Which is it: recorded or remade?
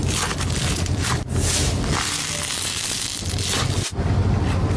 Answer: recorded